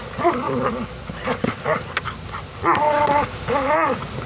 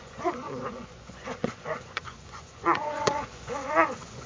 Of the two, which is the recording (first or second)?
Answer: first